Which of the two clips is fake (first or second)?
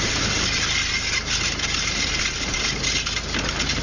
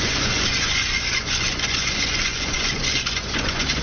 second